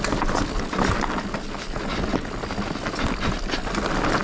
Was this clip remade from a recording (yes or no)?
no